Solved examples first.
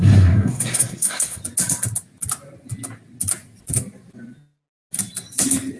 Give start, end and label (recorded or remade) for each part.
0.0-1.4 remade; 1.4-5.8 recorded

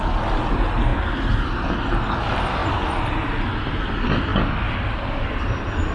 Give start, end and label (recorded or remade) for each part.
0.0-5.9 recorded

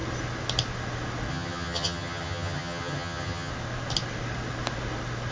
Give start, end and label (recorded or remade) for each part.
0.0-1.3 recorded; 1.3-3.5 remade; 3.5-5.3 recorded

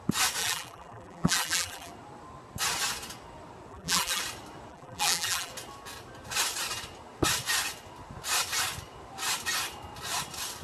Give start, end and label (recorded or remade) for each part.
0.0-0.4 recorded; 0.4-1.9 remade; 1.9-3.7 recorded; 3.7-4.2 remade; 4.2-4.7 recorded; 4.7-5.5 remade; 5.5-10.6 recorded